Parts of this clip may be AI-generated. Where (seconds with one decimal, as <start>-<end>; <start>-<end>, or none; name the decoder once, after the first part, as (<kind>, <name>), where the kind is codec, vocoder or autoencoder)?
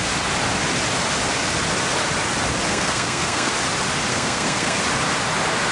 2.7-3.5 (codec, SNAC); 4.1-4.8